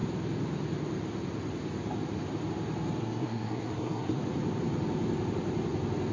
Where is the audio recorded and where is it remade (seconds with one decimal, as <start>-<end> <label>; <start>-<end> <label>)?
0.0-3.0 recorded; 3.0-4.2 remade; 4.2-6.1 recorded